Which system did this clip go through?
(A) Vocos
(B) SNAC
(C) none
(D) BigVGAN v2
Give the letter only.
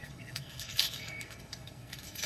B